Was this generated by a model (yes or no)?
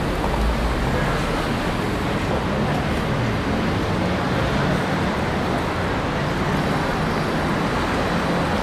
no